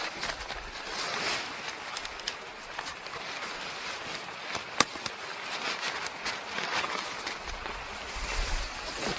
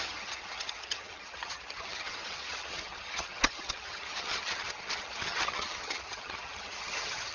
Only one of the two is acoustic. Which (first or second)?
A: first